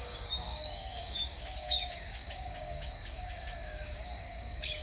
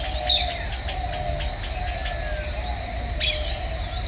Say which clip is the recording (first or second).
second